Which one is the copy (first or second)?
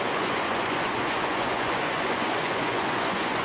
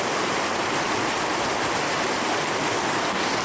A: first